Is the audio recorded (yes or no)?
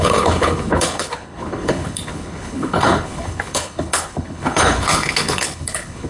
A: no